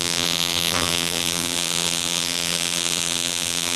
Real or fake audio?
fake